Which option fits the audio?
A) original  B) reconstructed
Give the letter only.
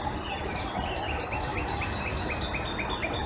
A